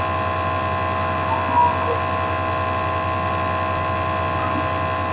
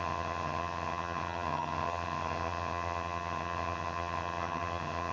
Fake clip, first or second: second